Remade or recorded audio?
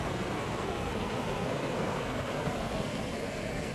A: remade